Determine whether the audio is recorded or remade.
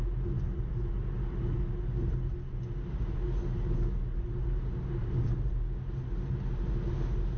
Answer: recorded